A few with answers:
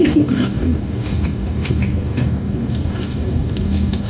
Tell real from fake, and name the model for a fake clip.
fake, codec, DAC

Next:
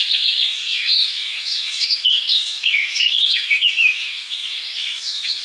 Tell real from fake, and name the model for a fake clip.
fake, codec, DAC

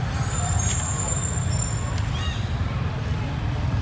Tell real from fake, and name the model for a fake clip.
real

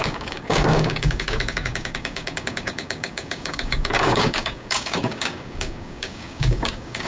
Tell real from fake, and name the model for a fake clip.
fake, codec, DAC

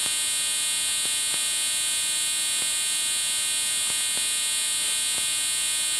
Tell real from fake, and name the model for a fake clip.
real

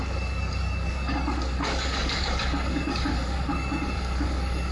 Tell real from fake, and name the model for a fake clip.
fake, codec, DAC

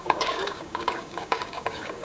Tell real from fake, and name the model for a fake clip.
fake, codec, DAC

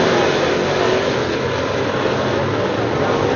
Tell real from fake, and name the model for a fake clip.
real